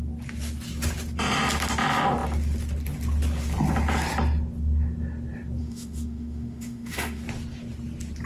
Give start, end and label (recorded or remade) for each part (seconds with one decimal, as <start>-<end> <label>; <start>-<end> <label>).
0.0-5.6 recorded; 5.6-7.2 remade; 7.2-8.3 recorded